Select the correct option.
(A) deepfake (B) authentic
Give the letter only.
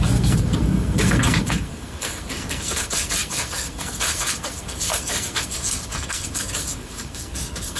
A